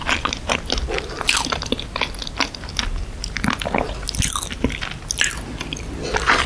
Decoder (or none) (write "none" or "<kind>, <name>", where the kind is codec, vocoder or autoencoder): none